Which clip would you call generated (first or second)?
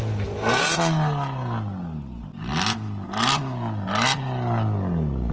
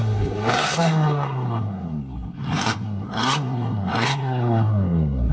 second